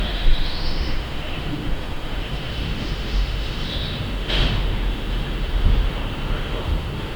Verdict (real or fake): fake